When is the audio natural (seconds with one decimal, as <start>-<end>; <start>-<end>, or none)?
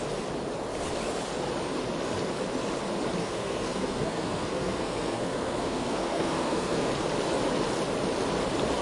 0.0-3.2; 6.9-8.8